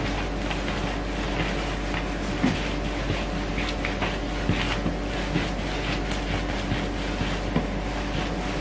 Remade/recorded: recorded